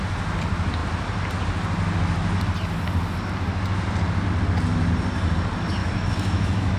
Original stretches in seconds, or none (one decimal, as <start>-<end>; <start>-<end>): 0.0-5.8